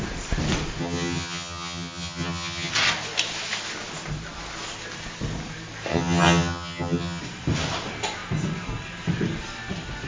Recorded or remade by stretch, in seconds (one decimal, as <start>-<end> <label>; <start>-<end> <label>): 0.0-0.8 recorded; 0.8-2.7 remade; 2.7-5.9 recorded; 5.9-7.2 remade; 7.2-10.1 recorded